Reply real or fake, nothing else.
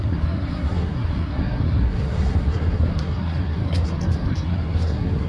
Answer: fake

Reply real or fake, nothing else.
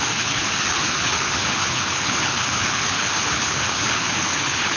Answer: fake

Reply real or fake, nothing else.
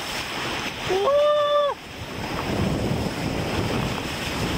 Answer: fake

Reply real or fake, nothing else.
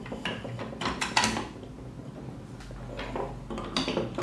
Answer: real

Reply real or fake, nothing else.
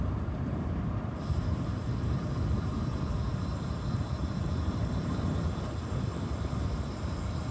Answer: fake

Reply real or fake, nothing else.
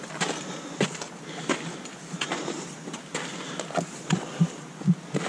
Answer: real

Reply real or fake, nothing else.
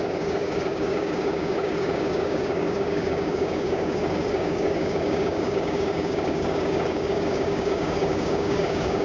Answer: fake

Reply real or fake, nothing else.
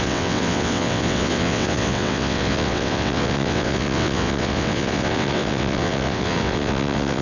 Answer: fake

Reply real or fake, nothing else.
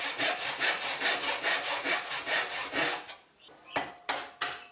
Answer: real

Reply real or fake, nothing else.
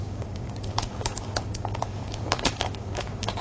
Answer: fake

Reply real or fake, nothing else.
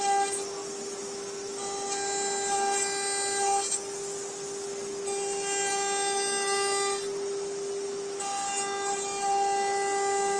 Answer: real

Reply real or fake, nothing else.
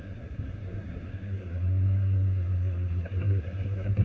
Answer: fake